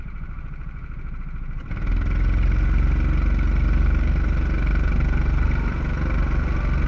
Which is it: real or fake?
real